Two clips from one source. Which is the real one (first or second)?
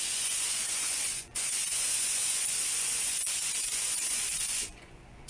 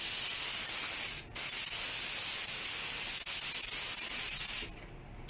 second